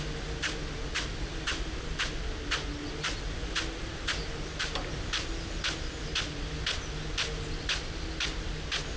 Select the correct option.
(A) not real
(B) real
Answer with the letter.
B